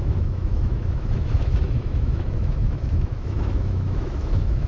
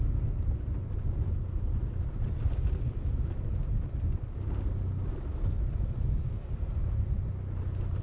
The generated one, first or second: first